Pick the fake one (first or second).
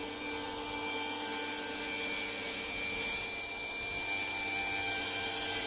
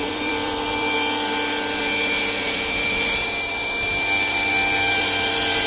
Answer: second